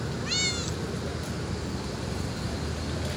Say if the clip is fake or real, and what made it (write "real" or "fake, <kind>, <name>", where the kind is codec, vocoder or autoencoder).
real